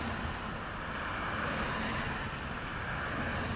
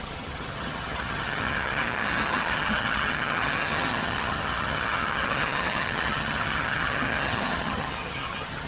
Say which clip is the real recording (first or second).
first